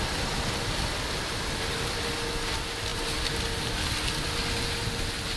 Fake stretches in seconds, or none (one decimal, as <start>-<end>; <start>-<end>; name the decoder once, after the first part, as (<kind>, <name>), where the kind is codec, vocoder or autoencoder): none

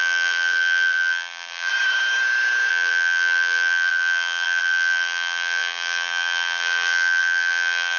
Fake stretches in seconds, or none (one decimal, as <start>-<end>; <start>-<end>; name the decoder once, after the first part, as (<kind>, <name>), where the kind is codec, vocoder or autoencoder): 0.0-1.7 (vocoder, BigVGAN v2); 2.7-8.0

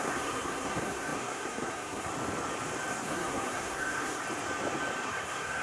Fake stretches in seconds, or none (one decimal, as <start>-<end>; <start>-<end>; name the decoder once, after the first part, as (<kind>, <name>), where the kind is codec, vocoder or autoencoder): 0.0-2.1 (codec, SNAC); 2.9-4.2; 5.0-5.6

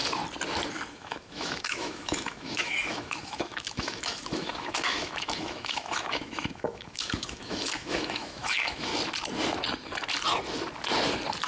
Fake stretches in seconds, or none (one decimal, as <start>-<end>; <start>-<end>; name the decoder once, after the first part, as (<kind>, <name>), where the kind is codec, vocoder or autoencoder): 0.9-8.9 (autoencoder, DAC-VAE)

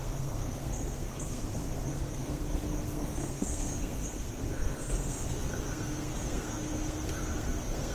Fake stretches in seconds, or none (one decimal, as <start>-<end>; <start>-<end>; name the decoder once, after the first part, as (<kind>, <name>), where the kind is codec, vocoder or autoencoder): 0.0-7.9 (codec, SNAC)

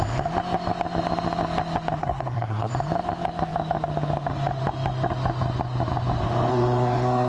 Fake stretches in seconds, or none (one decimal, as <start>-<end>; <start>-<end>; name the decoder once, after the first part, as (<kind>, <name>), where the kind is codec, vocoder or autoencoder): 2.0-2.7 (codec, SNAC); 6.5-7.3

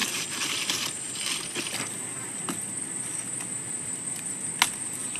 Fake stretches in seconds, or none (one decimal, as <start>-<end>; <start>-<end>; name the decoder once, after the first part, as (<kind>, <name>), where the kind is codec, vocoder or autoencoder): 0.0-2.3 (vocoder, BigVGAN v2)

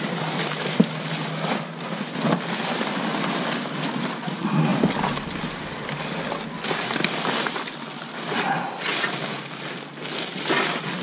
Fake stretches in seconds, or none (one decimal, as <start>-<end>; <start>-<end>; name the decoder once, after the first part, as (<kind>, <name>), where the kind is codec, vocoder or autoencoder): none